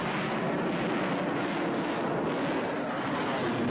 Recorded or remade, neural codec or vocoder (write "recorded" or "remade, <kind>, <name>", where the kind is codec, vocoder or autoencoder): recorded